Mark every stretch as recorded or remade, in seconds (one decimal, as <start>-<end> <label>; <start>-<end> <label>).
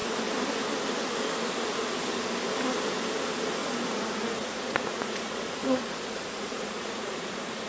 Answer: 0.0-3.6 recorded; 3.6-7.7 remade